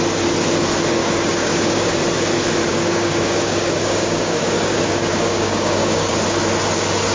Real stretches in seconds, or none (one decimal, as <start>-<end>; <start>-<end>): 0.0-1.0; 1.9-2.7; 6.1-7.1